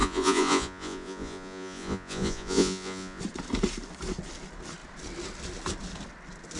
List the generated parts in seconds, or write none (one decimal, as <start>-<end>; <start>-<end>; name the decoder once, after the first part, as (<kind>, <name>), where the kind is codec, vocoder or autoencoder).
0.0-3.2 (vocoder, Vocos)